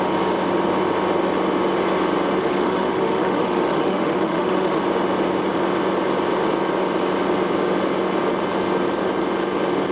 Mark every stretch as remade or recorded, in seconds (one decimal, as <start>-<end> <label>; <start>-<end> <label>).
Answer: 0.0-2.4 recorded; 2.4-4.8 remade; 4.8-9.9 recorded